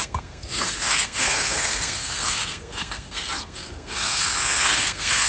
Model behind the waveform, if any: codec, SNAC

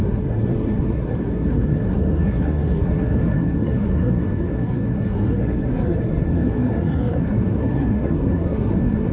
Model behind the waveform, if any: codec, SNAC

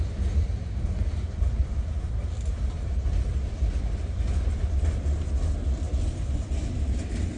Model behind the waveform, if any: none